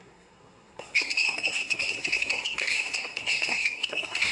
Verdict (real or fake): fake